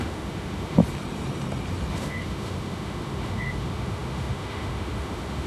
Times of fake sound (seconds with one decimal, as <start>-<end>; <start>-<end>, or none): 0.0-0.8; 1.9-5.5